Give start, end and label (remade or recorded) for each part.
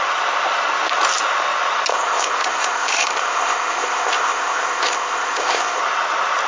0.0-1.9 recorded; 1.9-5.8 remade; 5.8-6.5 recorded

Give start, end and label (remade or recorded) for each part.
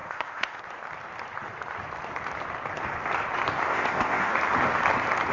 0.0-0.6 remade; 0.6-3.7 recorded; 3.7-4.3 remade; 4.3-5.3 recorded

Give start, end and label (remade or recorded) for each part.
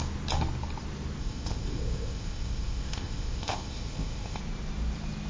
0.0-1.2 recorded; 1.2-4.4 remade; 4.4-5.3 recorded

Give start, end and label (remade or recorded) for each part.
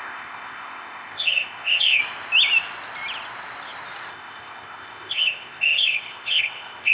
0.0-2.0 remade; 2.0-4.1 recorded; 4.1-6.9 remade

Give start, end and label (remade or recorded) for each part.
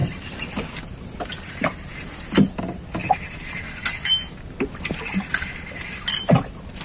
0.0-6.8 recorded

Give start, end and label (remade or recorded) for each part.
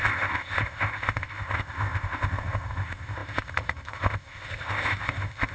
0.0-5.5 remade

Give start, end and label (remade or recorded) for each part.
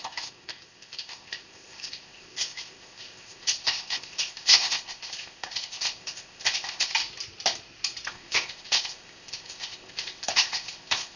0.0-6.9 remade; 6.9-8.1 recorded; 8.1-11.2 remade